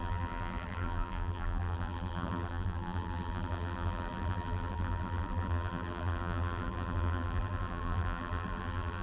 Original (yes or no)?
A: no